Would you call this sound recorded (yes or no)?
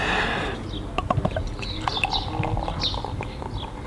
yes